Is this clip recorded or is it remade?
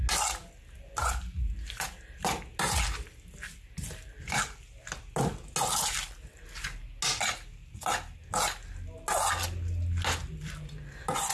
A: recorded